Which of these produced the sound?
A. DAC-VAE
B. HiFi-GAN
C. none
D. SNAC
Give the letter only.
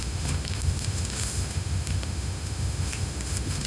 A